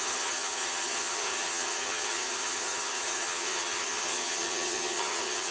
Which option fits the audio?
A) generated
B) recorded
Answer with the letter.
A